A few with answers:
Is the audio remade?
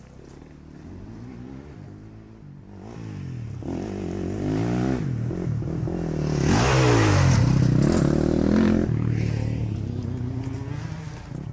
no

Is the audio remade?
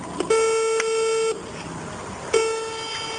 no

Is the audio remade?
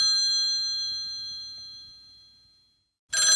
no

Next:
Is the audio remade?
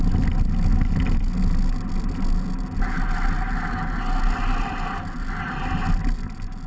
no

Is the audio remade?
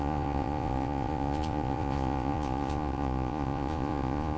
yes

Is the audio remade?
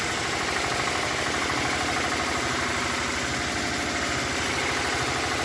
no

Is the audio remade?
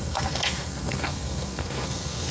yes